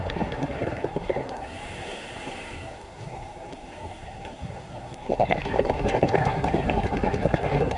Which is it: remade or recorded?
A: remade